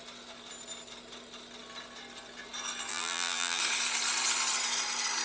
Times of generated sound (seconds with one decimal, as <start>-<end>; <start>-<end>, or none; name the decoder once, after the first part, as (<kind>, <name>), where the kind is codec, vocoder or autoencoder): 2.9-3.6 (vocoder, BigVGAN v2)